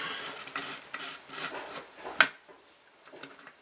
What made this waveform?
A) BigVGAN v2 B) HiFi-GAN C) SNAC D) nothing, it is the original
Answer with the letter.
D